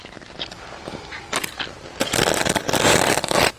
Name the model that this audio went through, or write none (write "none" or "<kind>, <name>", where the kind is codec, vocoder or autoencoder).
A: none